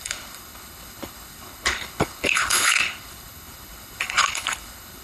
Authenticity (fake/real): fake